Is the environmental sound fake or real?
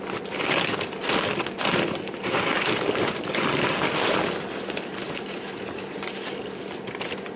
real